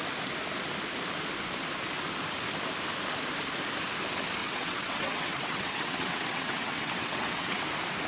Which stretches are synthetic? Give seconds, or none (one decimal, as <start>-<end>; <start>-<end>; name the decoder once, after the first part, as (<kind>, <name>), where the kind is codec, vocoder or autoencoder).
4.4-7.6 (vocoder, WaveNeXt)